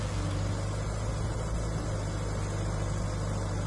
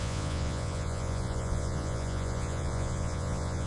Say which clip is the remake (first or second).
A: second